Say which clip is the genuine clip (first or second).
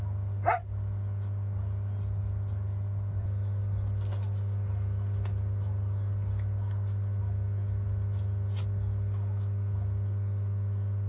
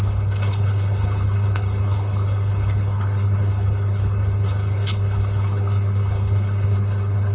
first